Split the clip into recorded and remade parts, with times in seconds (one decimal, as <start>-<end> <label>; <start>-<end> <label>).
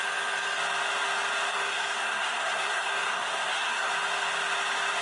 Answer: 0.0-1.5 recorded; 1.5-3.9 remade; 3.9-5.0 recorded